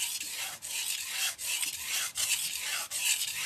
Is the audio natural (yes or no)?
yes